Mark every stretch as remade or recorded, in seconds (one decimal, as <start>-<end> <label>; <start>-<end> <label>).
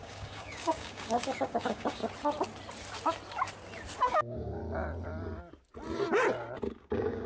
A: 0.0-2.0 remade; 2.0-4.0 recorded; 4.0-4.6 remade; 4.6-6.6 recorded; 6.6-7.3 remade